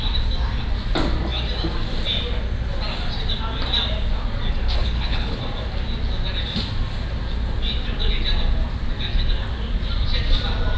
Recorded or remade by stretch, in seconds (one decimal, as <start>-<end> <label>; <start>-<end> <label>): 0.0-4.8 recorded; 4.8-5.4 remade; 5.4-10.8 recorded